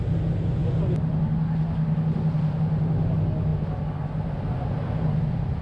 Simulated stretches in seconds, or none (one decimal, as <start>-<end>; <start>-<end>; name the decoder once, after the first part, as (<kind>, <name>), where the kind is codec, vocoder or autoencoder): none